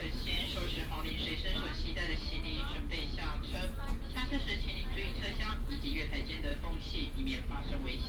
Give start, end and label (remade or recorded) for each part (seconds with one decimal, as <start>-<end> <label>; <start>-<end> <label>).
0.0-0.9 remade; 0.9-8.1 recorded